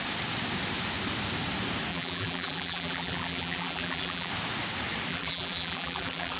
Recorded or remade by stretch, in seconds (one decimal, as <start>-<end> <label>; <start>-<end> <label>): 0.0-1.9 recorded; 1.9-4.3 remade; 4.3-5.1 recorded; 5.1-6.4 remade

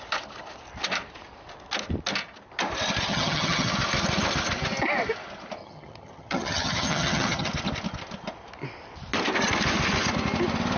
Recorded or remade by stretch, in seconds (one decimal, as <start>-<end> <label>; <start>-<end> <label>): 0.0-3.1 recorded; 3.1-3.7 remade; 3.7-5.6 recorded; 5.6-7.5 remade; 7.5-10.8 recorded